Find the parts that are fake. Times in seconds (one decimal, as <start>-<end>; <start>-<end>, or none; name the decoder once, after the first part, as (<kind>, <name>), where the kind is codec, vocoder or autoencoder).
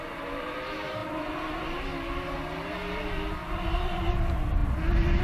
none